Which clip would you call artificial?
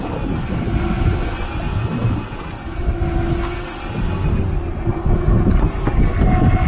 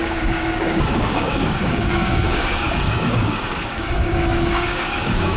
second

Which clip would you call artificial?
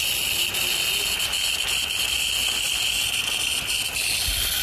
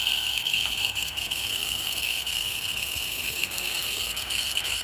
second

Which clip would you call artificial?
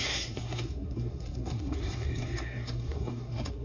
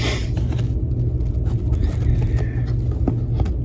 first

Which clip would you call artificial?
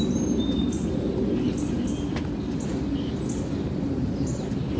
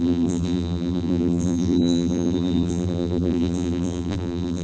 second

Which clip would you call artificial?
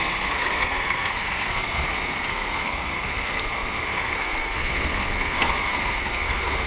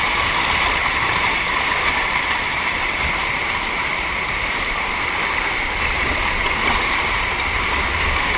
first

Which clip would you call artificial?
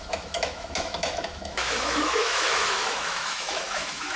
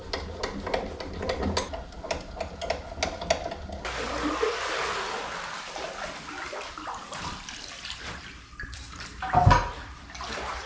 first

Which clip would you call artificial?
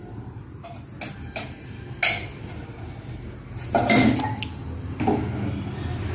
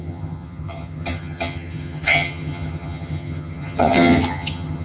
second